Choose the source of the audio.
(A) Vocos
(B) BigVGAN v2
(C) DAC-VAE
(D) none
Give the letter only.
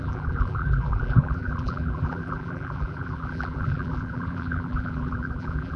B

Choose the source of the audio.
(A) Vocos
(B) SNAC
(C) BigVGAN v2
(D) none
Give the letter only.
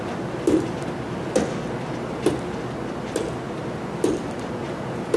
D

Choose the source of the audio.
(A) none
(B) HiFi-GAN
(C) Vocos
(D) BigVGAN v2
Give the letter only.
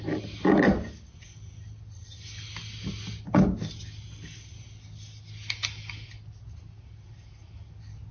A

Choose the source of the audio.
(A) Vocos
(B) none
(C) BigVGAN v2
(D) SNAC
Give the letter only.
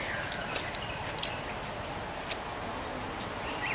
B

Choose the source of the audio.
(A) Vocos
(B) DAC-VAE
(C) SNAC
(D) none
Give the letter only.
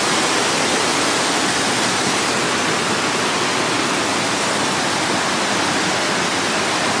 D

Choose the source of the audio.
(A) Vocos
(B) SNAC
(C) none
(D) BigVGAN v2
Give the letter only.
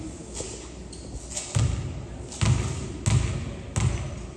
C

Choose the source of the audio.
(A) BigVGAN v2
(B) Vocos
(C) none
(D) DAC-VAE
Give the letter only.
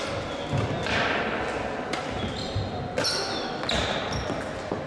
C